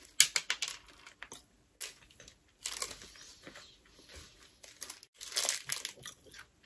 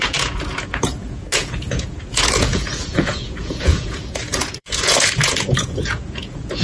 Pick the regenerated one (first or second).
second